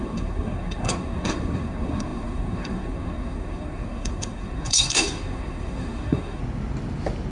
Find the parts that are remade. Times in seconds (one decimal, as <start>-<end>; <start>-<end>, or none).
0.0-6.4